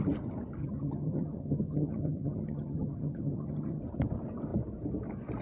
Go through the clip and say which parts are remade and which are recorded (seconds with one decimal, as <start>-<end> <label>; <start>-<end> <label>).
0.0-0.6 recorded; 0.6-3.8 remade; 3.8-5.4 recorded